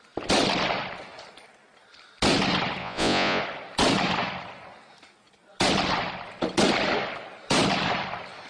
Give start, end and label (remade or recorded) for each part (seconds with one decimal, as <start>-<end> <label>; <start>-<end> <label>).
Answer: 0.0-2.8 recorded; 2.8-3.4 remade; 3.4-8.5 recorded